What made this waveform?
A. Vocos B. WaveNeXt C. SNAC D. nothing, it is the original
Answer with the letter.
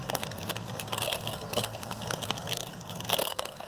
C